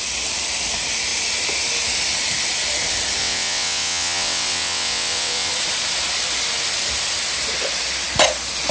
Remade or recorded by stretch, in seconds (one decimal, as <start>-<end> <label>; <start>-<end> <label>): 0.0-3.2 recorded; 3.2-5.5 remade; 5.5-8.7 recorded